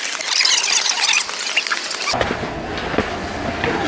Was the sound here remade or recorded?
recorded